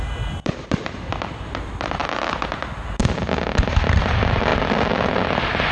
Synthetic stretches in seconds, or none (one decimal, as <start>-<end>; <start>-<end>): 0.0-2.0; 3.0-5.7